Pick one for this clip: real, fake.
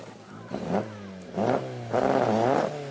real